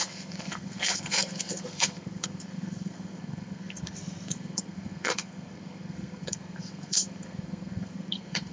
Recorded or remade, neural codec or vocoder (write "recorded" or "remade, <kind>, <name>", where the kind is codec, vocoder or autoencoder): remade, codec, SNAC